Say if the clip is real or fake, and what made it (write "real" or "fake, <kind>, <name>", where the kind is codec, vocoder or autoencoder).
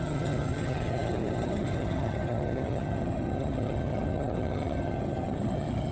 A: fake, vocoder, HiFi-GAN